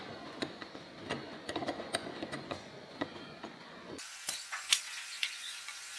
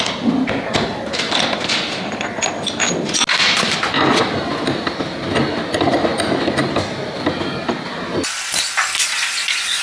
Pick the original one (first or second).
second